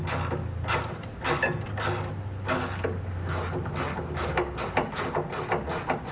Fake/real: real